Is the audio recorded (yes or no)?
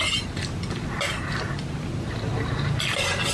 no